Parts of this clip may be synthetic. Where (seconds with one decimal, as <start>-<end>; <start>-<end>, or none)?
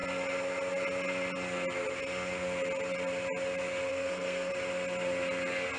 3.9-4.5